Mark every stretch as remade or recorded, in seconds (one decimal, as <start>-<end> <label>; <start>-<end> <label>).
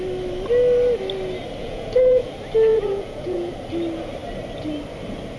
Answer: 0.0-1.6 recorded; 1.6-2.3 remade; 2.3-2.7 recorded; 2.7-3.5 remade; 3.5-5.4 recorded